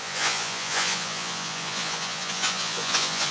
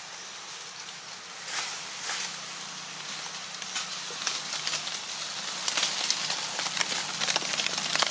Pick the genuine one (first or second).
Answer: second